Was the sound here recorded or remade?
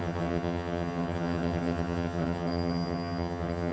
remade